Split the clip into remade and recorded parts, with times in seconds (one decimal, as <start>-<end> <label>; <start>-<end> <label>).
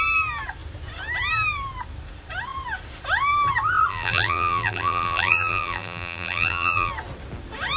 0.0-3.9 recorded; 3.9-6.9 remade; 6.9-7.8 recorded